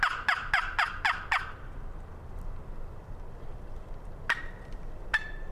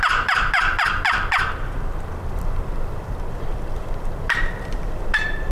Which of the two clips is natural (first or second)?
first